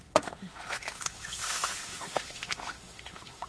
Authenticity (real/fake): fake